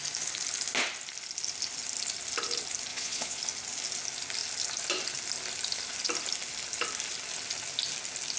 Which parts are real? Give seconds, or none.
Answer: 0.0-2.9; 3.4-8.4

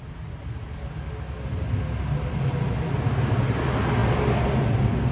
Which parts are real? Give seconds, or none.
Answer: 0.0-5.1

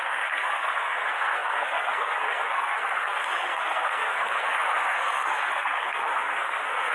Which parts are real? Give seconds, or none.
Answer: none

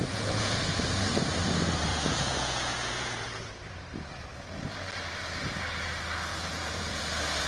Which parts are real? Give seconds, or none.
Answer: 0.8-1.9; 3.5-6.3; 7.0-7.5

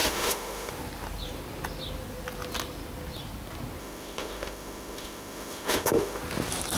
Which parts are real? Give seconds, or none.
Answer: 0.7-3.8; 6.2-6.8

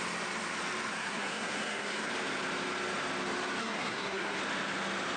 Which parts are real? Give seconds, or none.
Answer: 0.0-0.9; 2.1-3.6; 4.4-5.2

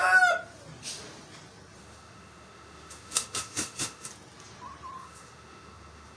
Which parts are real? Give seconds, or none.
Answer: 0.0-1.8; 4.1-5.0